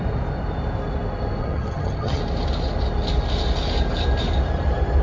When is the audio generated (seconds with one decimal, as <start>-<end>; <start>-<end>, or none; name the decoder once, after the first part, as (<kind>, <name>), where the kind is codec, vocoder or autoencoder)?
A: 1.4-2.2 (vocoder, HiFi-GAN)